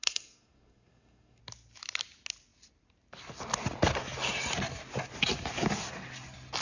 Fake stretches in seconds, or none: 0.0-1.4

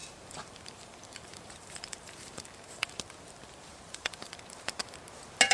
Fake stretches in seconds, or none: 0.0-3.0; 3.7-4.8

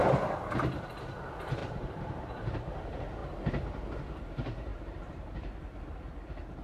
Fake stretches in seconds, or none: 1.6-2.3; 4.7-5.6

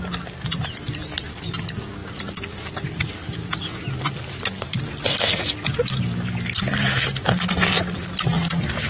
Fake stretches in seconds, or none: 2.0-4.8